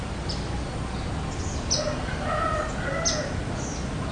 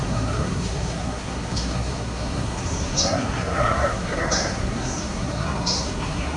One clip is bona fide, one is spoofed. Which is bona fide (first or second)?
first